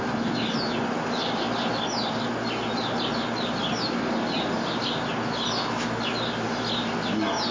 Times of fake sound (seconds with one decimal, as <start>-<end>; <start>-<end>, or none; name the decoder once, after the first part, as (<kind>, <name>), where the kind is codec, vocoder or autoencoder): none